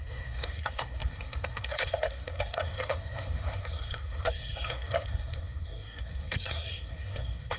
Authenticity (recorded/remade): remade